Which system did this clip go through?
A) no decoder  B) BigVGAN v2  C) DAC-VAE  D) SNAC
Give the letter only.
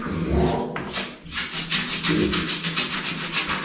A